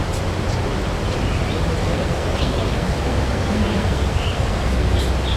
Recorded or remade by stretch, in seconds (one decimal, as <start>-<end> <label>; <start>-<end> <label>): 0.0-1.8 recorded; 1.8-5.0 remade; 5.0-5.4 recorded